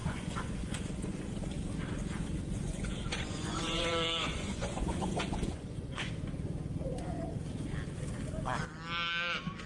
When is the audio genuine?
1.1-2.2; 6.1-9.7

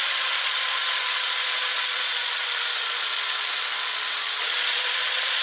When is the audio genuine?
none

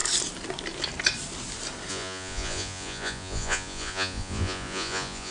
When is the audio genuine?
0.0-1.9